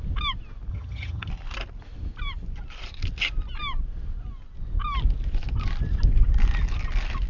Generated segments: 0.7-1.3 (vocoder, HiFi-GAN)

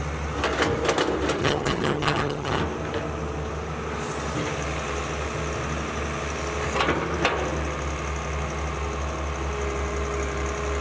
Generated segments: 1.4-2.6 (vocoder, HiFi-GAN)

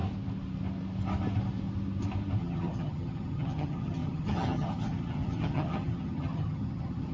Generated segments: 2.4-7.1 (vocoder, HiFi-GAN)

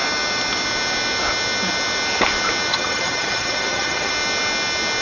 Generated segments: 2.7-4.1 (vocoder, HiFi-GAN)